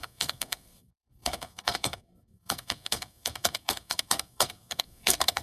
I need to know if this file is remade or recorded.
remade